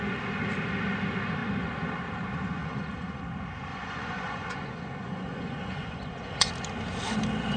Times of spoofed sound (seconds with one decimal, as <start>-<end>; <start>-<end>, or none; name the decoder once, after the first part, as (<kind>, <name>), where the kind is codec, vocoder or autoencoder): 2.6-3.2 (vocoder, Vocos); 3.7-6.5